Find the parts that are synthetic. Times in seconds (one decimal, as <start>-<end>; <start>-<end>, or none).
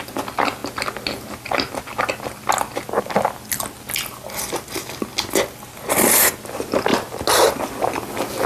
none